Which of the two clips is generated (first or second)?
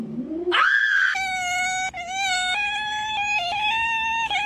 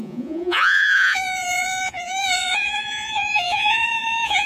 second